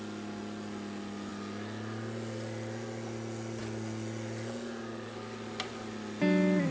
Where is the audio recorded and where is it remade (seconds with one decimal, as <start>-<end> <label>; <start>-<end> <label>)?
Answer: 0.0-6.7 recorded